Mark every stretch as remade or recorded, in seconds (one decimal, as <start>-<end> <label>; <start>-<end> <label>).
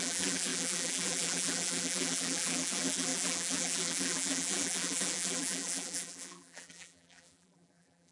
0.0-8.1 remade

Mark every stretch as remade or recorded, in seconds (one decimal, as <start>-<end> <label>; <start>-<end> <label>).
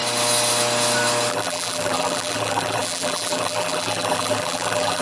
0.0-1.3 recorded; 1.3-5.0 remade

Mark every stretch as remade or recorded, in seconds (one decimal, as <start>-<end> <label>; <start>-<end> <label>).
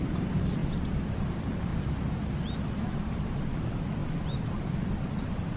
0.0-0.6 remade; 0.6-1.1 recorded; 1.1-1.7 remade; 1.7-3.3 recorded; 3.3-5.6 remade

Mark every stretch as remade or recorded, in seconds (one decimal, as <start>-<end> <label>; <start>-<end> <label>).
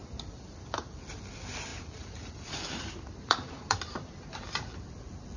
0.0-1.7 recorded; 1.7-4.9 remade; 4.9-5.4 recorded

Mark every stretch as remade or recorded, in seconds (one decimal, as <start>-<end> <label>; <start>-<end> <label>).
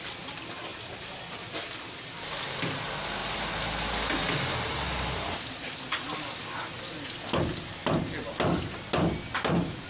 0.0-0.7 recorded; 0.7-1.4 remade; 1.4-9.9 recorded